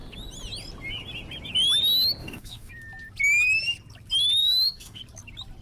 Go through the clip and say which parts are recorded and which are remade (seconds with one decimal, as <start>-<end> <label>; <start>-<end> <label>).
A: 0.0-2.2 recorded; 2.2-2.7 remade; 2.7-4.4 recorded; 4.4-5.0 remade; 5.0-5.6 recorded